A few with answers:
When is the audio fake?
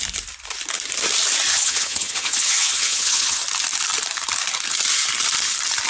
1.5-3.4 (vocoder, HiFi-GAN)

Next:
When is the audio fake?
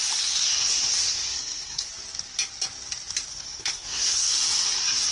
1.1-1.8 (codec, SNAC); 3.3-4.2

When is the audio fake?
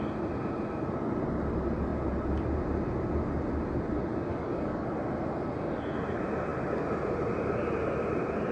4.3-5.0 (codec, DAC)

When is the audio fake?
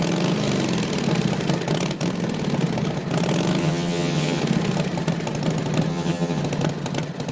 3.6-4.4 (vocoder, HiFi-GAN); 5.9-6.4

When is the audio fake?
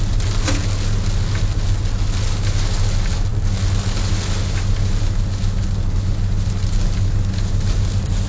none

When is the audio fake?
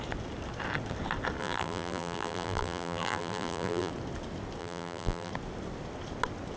1.4-3.9 (vocoder, BigVGAN v2); 4.6-5.3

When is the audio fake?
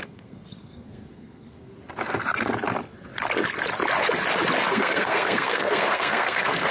0.0-1.7 (codec, SNAC); 4.7-6.7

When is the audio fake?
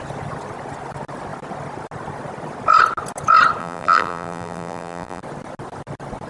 3.6-5.2 (vocoder, BigVGAN v2)